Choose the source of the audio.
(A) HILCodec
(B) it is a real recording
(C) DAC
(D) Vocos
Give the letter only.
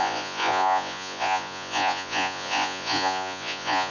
D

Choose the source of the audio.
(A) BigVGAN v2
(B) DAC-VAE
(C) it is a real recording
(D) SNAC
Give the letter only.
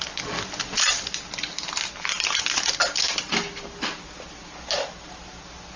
C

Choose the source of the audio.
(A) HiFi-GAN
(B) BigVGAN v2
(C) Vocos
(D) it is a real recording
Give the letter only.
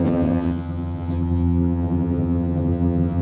A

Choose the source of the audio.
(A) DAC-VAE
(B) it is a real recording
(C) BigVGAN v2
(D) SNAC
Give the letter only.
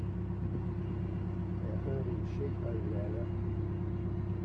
B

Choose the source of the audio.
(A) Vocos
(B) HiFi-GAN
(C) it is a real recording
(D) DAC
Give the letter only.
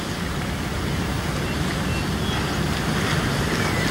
C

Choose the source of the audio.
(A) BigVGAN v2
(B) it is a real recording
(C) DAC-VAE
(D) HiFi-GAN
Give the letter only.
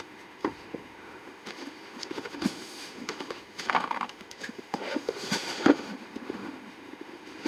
C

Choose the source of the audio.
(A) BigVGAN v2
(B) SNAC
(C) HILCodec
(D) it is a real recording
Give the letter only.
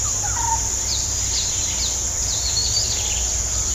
D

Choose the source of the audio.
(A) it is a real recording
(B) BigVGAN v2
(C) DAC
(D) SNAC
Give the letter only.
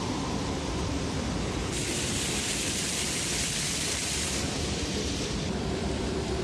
B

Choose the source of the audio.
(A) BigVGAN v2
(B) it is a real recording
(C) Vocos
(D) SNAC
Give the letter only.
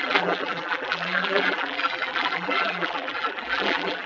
A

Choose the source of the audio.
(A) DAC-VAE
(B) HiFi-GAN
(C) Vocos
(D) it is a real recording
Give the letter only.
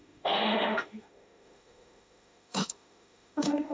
A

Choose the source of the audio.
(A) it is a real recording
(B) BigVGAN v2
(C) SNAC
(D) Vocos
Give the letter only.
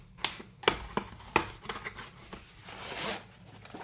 A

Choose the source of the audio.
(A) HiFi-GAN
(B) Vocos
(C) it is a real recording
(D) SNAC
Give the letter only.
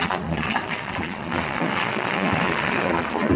B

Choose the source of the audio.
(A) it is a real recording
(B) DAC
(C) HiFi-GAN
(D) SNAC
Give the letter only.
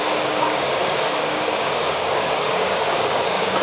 B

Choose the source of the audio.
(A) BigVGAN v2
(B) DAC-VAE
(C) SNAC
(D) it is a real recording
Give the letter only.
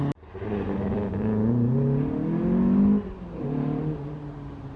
D